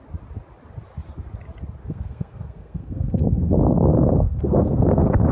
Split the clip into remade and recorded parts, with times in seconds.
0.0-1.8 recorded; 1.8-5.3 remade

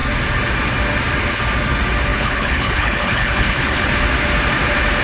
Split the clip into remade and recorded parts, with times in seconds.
0.0-2.1 recorded; 2.1-3.9 remade; 3.9-5.0 recorded